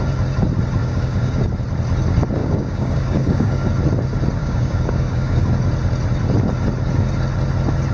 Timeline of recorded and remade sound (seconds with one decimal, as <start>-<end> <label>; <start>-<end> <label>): 0.0-0.8 recorded; 0.8-1.4 remade; 1.4-2.4 recorded; 2.4-3.7 remade; 3.7-4.4 recorded; 4.4-5.4 remade; 5.4-7.9 recorded